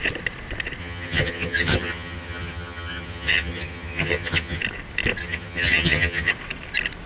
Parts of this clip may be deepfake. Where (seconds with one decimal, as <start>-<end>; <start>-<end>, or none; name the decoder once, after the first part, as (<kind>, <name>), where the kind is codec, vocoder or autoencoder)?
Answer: 0.8-4.6 (vocoder, HiFi-GAN); 5.2-6.3